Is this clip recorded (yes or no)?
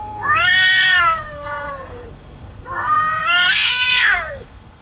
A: no